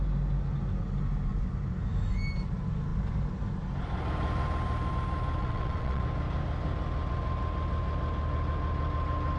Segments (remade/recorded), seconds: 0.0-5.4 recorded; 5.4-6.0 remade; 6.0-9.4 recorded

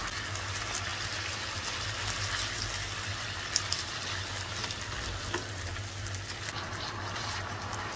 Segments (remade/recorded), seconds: 0.0-8.0 recorded

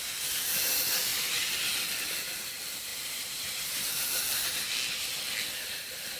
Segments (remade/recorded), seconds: 0.0-1.1 recorded; 1.1-1.7 remade; 1.7-2.9 recorded; 2.9-3.8 remade; 3.8-6.2 recorded

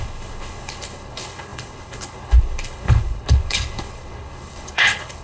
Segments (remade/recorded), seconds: 0.0-5.2 remade